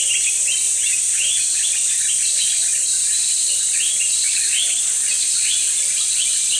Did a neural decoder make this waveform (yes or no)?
no